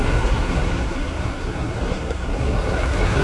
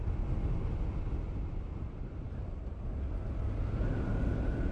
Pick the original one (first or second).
second